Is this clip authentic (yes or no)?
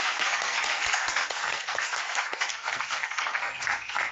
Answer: no